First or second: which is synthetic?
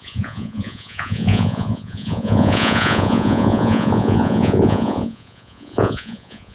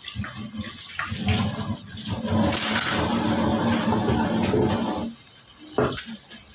first